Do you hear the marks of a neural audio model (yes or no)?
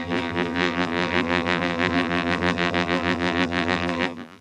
yes